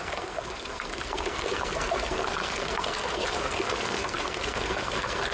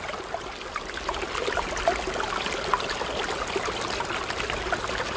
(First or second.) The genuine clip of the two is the second